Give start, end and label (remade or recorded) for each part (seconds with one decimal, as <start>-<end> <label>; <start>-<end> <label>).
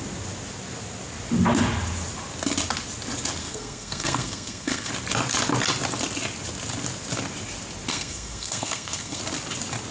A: 0.0-3.4 recorded; 3.4-4.9 remade; 4.9-7.9 recorded; 7.9-9.2 remade; 9.2-9.9 recorded